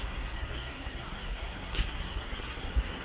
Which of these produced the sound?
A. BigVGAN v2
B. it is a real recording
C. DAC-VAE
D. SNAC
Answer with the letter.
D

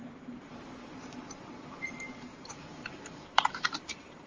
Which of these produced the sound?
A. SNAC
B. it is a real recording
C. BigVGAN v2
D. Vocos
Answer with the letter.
C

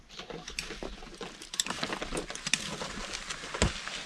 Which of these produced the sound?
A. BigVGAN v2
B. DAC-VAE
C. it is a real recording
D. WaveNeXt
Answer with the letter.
C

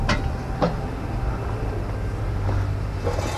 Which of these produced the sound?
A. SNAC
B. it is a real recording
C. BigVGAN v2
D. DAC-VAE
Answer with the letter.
B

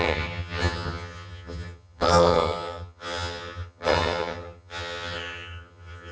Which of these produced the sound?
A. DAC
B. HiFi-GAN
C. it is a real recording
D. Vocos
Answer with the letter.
B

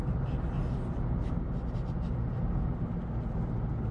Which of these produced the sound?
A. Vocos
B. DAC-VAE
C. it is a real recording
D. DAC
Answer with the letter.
C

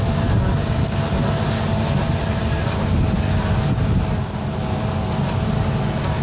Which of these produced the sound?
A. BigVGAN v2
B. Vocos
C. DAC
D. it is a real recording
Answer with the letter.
D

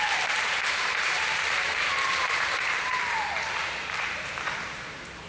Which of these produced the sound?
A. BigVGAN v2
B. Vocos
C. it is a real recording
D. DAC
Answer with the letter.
A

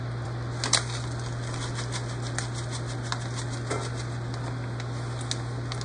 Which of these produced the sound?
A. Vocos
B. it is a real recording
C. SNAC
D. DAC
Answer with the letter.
B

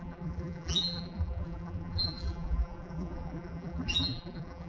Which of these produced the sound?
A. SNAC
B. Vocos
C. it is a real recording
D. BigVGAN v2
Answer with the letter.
D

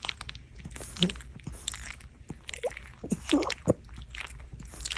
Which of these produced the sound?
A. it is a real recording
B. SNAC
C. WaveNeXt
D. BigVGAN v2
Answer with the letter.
A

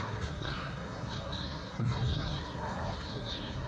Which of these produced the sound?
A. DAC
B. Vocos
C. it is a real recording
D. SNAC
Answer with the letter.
D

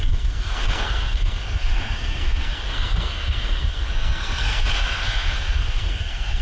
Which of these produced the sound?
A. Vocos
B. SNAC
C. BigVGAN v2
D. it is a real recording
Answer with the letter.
B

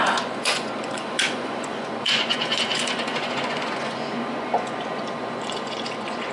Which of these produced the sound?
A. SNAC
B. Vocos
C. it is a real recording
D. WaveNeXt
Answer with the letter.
B